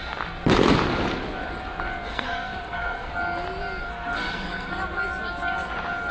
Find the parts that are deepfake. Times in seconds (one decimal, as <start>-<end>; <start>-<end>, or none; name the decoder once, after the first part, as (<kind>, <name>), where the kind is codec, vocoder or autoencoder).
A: 2.1-3.1 (codec, SNAC); 3.8-4.7